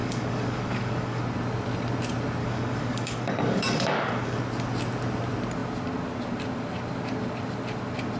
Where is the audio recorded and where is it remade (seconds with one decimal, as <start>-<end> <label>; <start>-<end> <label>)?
0.0-1.2 remade; 1.2-2.4 recorded; 2.4-4.4 remade; 4.4-8.2 recorded